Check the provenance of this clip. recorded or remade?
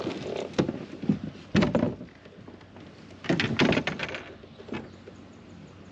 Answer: recorded